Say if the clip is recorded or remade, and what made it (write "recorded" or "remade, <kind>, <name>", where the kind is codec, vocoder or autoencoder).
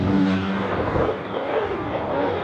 remade, codec, DAC